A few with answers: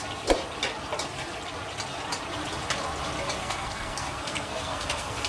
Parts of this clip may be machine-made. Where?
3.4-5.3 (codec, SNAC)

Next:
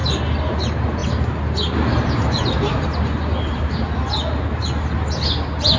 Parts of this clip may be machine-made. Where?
none

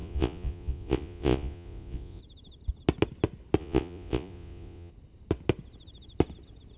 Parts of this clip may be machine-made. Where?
0.0-2.2 (vocoder, Vocos); 3.6-4.9

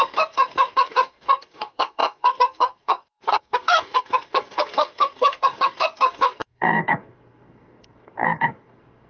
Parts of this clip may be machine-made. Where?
0.0-9.1 (codec, SNAC)

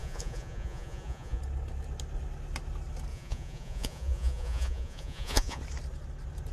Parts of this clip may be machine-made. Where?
0.0-1.4 (vocoder, Vocos); 3.1-5.6

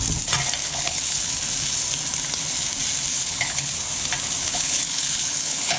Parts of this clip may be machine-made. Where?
0.6-1.3 (codec, HILCodec); 3.1-3.7; 4.4-5.8

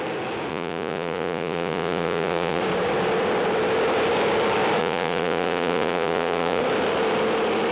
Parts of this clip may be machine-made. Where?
0.5-2.6 (vocoder, Vocos); 4.8-6.6

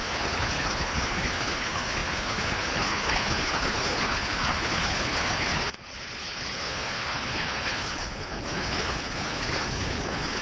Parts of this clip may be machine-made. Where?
0.0-10.4 (codec, HILCodec)